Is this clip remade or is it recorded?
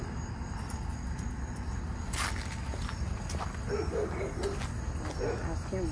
recorded